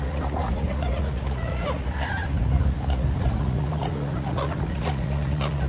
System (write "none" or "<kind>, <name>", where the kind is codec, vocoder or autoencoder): vocoder, Vocos